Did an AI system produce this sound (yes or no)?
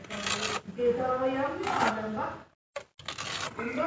no